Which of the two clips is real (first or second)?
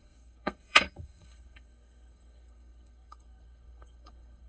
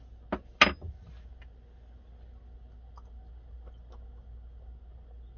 second